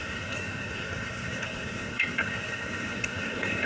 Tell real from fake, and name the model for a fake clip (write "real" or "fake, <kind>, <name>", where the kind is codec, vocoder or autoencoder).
fake, codec, SNAC